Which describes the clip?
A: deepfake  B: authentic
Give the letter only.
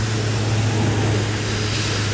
B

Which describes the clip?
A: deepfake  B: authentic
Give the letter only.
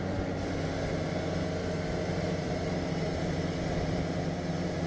B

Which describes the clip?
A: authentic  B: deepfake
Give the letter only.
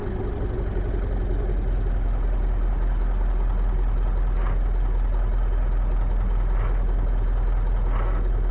A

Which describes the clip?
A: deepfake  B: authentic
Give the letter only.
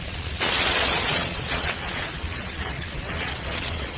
A